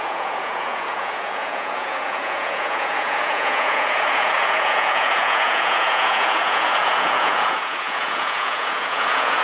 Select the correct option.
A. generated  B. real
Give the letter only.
A